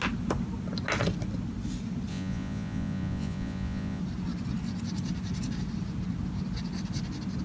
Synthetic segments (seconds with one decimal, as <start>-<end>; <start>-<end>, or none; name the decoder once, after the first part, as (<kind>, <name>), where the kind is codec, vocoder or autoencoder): 2.1-4.0 (vocoder, Vocos)